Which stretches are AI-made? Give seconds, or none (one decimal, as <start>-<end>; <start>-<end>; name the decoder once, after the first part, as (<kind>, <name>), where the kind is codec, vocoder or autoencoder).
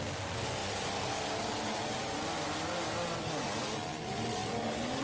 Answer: none